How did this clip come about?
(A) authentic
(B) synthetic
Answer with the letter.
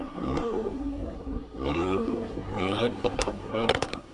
B